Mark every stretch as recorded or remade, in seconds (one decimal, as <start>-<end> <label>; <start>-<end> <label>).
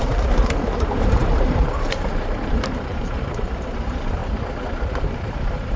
0.0-4.2 remade; 4.2-5.0 recorded; 5.0-5.8 remade